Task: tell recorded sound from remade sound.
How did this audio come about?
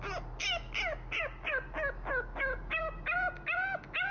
recorded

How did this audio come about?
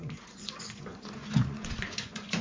remade